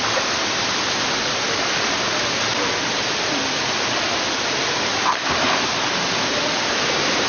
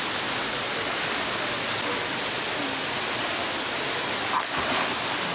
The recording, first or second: second